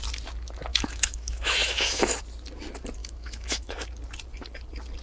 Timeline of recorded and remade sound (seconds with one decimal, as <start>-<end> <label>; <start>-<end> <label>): 0.0-0.7 recorded; 0.7-2.1 remade; 2.1-3.0 recorded; 3.0-3.7 remade; 3.7-5.0 recorded